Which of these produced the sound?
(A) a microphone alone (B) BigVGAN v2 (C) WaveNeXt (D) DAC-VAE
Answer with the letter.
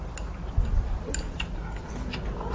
A